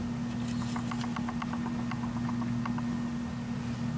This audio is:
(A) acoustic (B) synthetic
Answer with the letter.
A